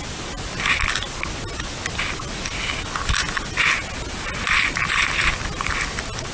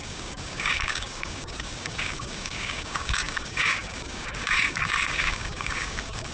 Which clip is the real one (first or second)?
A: first